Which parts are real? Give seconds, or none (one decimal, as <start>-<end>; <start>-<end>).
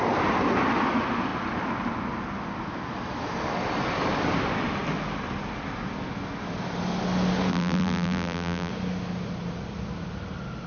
0.0-7.5; 8.7-10.7